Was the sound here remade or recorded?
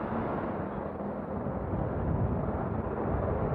recorded